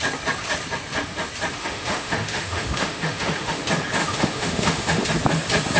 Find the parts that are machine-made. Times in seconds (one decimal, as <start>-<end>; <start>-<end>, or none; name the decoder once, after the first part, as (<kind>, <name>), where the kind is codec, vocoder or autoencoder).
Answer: 1.6-3.6 (autoencoder, DAC-VAE); 4.0-5.1